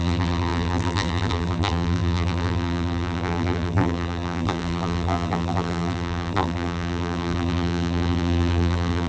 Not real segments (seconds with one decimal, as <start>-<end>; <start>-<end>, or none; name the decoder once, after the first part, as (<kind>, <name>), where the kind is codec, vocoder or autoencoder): 0.0-9.1 (vocoder, BigVGAN v2)